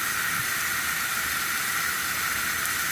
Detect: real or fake real